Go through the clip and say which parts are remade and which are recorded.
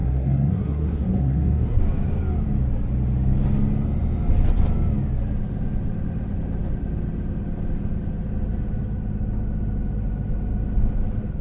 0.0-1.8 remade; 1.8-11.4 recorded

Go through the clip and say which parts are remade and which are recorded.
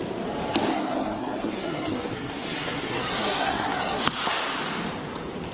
0.0-0.7 recorded; 0.7-4.0 remade; 4.0-5.5 recorded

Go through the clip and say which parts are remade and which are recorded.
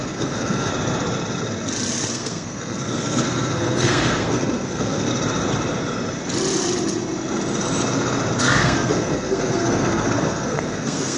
0.0-0.7 remade; 0.7-2.1 recorded; 2.1-5.1 remade; 5.1-8.4 recorded; 8.4-11.2 remade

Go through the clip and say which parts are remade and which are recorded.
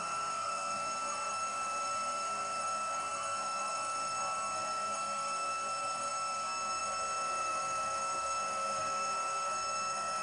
0.0-10.2 remade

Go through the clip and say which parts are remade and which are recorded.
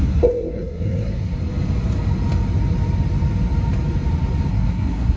0.0-1.4 remade; 1.4-4.5 recorded; 4.5-5.2 remade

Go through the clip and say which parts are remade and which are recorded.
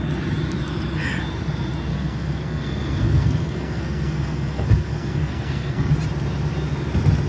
0.0-1.9 recorded; 1.9-5.9 remade; 5.9-7.3 recorded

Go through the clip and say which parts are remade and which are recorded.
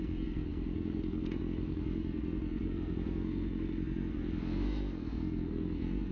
0.0-6.1 remade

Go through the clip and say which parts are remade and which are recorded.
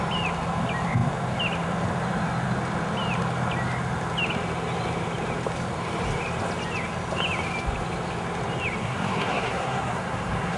0.0-8.8 recorded; 8.8-10.6 remade